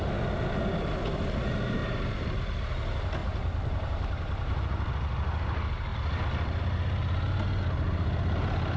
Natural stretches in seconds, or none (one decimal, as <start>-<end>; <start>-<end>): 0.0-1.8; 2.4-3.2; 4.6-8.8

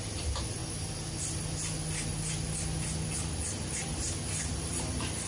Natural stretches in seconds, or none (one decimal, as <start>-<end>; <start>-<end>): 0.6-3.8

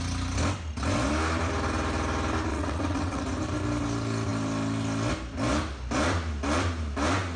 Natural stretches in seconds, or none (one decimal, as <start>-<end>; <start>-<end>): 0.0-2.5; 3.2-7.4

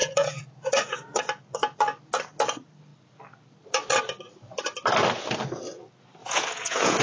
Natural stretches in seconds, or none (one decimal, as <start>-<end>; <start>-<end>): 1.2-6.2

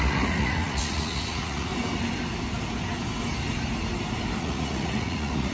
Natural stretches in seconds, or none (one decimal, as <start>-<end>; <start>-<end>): 1.7-4.4

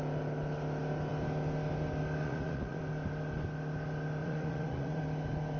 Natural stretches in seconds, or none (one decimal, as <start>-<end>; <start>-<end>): 0.0-2.2; 2.8-4.2; 5.0-5.6